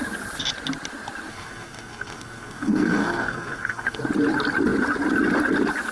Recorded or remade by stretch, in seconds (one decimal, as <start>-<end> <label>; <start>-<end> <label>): 0.0-1.3 recorded; 1.3-4.0 remade; 4.0-5.9 recorded